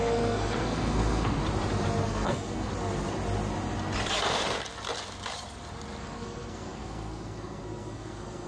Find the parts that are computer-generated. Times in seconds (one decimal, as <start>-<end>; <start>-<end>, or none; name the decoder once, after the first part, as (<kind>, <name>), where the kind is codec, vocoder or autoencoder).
0.0-1.4 (codec, SNAC); 2.0-2.7; 6.0-8.5